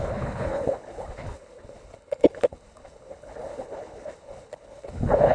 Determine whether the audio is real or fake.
fake